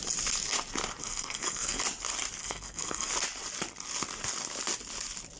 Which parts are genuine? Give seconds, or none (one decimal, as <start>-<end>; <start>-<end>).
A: 0.0-1.0; 1.8-2.4; 3.1-5.4